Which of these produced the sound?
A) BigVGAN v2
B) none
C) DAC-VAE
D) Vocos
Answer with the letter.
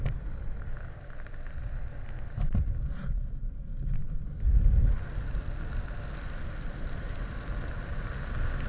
B